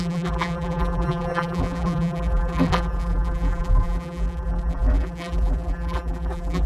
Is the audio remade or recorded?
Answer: remade